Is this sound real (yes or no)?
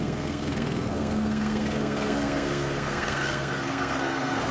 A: no